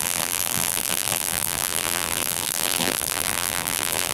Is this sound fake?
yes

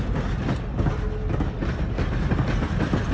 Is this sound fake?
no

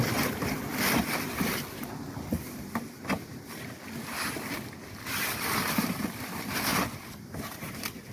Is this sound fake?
yes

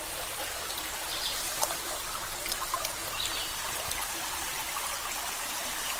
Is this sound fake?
no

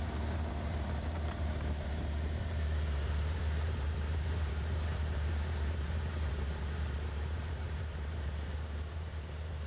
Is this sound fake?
yes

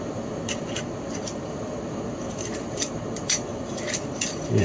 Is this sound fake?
yes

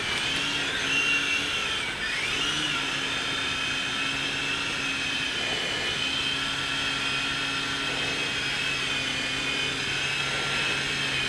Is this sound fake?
no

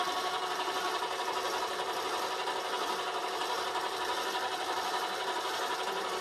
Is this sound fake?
yes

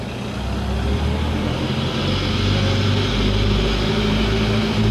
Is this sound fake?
no